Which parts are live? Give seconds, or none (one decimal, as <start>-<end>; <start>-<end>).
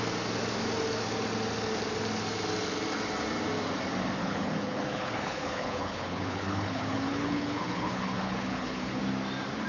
0.0-4.2; 9.0-9.7